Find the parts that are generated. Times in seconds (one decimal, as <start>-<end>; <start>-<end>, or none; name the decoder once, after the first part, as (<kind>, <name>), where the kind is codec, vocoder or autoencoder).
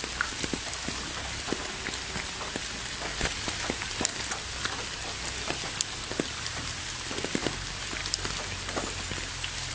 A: none